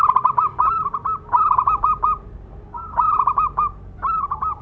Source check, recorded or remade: recorded